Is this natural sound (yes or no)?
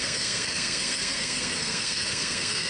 no